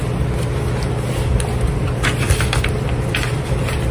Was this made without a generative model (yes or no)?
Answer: yes